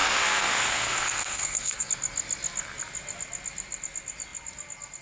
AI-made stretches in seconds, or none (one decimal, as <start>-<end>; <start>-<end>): 0.0-1.9